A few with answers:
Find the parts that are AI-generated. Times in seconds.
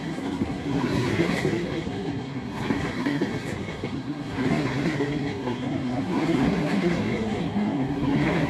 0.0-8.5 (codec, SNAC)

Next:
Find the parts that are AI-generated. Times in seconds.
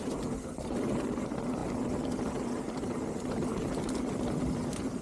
none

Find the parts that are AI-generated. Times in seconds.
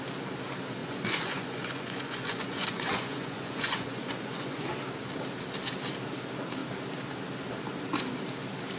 0.8-4.7 (vocoder, Vocos)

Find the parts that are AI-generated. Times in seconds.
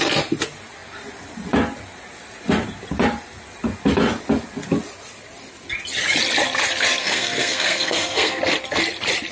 7.0-8.4 (codec, SNAC)